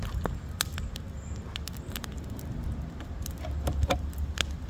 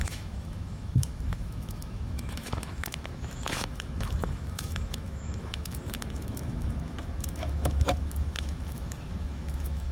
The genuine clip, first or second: first